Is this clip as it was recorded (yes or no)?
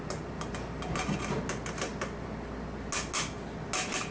yes